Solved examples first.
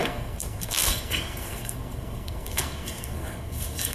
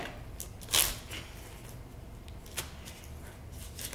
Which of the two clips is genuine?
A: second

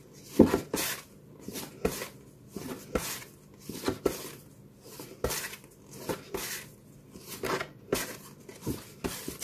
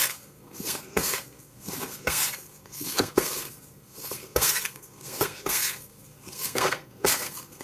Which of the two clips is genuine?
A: first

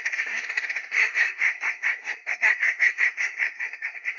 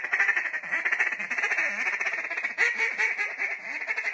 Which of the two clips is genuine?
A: second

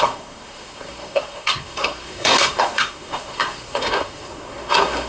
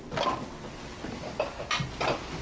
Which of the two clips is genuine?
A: second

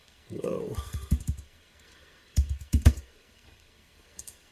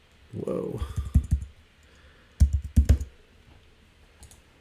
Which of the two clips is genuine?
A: second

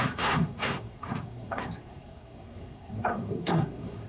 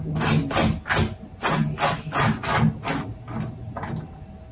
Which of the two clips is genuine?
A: second